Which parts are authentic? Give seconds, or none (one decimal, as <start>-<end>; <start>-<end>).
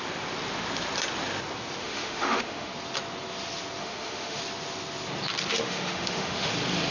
0.0-1.8; 2.7-3.8; 4.4-5.5; 6.5-6.9